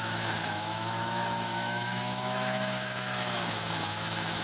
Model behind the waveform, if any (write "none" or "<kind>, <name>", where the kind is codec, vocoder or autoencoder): autoencoder, DAC-VAE